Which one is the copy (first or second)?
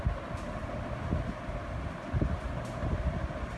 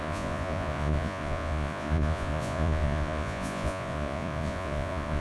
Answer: second